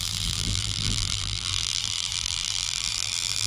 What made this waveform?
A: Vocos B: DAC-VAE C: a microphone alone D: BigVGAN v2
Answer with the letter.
D